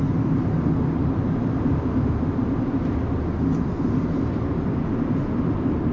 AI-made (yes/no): no